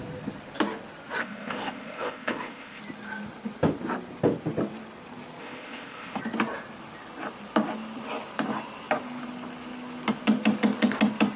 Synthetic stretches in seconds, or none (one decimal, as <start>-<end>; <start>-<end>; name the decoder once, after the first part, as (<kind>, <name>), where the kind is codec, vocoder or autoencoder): 1.2-2.8 (codec, ZipCodec); 5.4-6.2